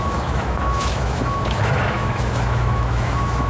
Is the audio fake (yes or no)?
yes